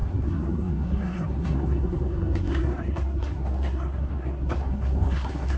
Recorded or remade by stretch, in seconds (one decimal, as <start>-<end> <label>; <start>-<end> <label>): 0.0-5.6 remade